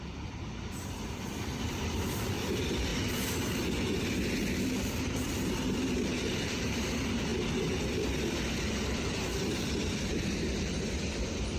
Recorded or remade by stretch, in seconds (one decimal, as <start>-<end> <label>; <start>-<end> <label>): 0.0-2.9 remade; 2.9-4.5 recorded; 4.5-7.3 remade; 7.3-7.9 recorded; 7.9-11.6 remade